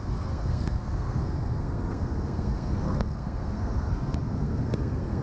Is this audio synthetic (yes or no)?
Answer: yes